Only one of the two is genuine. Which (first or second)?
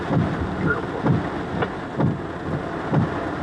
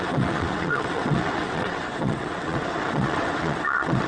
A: first